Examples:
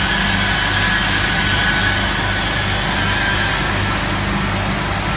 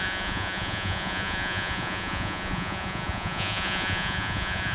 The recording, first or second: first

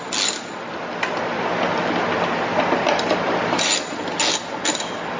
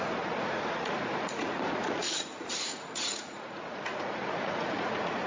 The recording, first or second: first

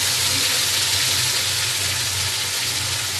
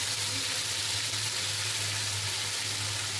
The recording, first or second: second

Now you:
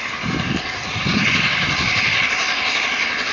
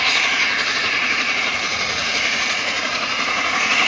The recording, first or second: first